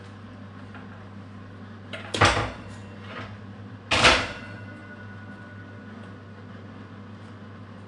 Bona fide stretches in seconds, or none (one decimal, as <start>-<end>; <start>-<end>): 0.0-7.9